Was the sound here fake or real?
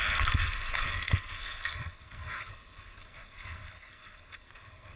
fake